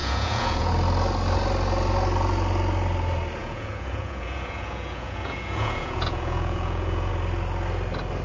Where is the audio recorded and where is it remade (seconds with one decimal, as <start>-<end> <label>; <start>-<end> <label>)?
0.0-0.7 remade; 0.7-3.4 recorded; 3.4-7.1 remade; 7.1-8.2 recorded